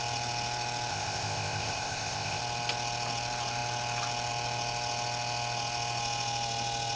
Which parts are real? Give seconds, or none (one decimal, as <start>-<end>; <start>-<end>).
0.0-0.9; 2.4-7.0